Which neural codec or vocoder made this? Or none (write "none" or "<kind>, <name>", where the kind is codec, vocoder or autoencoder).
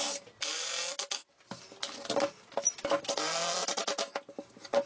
none